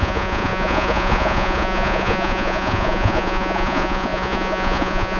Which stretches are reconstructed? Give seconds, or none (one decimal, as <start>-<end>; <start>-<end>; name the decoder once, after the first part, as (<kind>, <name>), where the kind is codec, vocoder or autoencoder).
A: 0.0-5.2 (vocoder, Vocos)